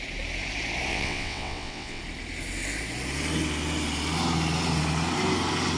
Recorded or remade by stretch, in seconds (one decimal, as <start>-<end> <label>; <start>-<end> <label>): 0.0-0.9 recorded; 0.9-2.0 remade; 2.0-5.8 recorded